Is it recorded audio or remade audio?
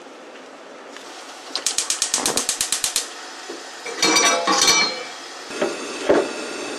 recorded